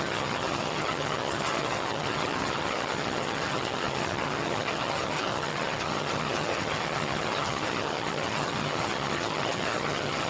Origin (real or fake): fake